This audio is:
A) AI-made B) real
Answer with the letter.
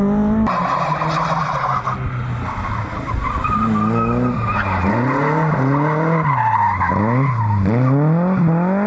B